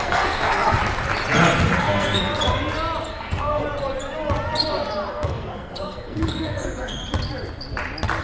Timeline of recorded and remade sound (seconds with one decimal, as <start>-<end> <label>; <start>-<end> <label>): 0.0-0.8 remade; 0.8-1.8 recorded; 1.8-2.3 remade; 2.3-3.1 recorded; 3.1-3.6 remade; 3.6-5.1 recorded; 5.1-7.0 remade; 7.0-8.2 recorded